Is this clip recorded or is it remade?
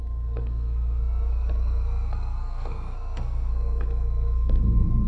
remade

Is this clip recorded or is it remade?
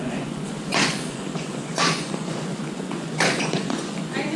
remade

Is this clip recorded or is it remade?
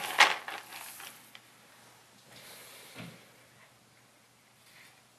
recorded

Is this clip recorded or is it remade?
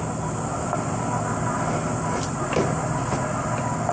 recorded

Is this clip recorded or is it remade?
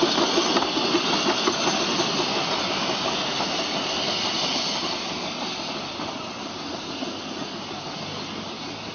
recorded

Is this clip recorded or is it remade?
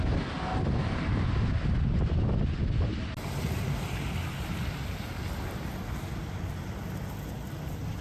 recorded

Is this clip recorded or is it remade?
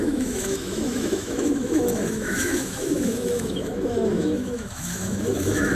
remade